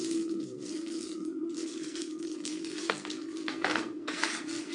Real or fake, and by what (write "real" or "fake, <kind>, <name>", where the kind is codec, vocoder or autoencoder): fake, codec, SNAC